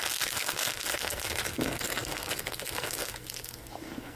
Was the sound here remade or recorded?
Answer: remade